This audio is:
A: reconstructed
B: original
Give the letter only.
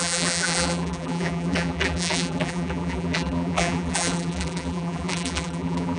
A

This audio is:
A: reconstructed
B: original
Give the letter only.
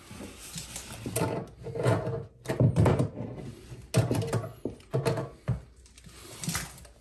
B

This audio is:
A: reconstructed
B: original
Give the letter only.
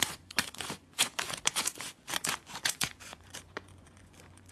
A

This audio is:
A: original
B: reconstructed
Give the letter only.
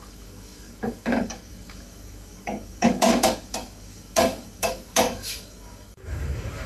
B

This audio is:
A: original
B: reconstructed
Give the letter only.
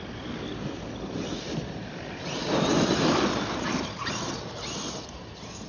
A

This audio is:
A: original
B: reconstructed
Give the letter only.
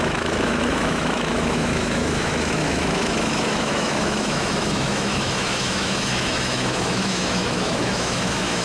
B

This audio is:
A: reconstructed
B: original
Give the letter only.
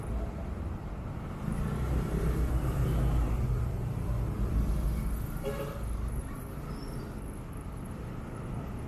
B